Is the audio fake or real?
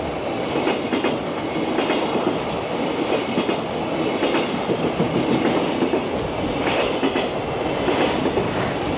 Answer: real